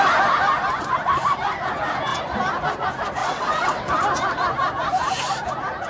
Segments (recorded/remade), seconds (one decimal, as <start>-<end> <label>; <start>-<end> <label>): 0.0-3.2 recorded; 3.2-3.9 remade; 3.9-5.9 recorded